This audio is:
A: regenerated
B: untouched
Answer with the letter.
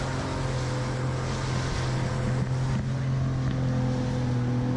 B